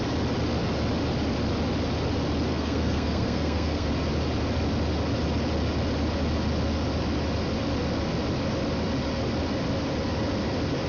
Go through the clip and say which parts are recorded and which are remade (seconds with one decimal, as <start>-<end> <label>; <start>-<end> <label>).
0.0-2.5 recorded; 2.5-3.9 remade; 3.9-10.9 recorded